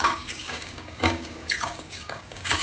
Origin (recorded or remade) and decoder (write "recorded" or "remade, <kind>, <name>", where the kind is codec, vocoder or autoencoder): remade, codec, DAC